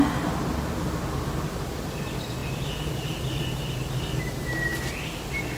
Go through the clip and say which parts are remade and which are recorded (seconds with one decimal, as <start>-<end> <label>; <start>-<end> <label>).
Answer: 0.0-5.6 recorded